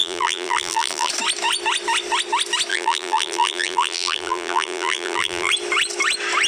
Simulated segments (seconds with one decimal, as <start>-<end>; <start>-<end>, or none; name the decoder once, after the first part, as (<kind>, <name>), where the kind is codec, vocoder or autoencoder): 0.0-1.1 (vocoder, BigVGAN v2); 2.7-5.5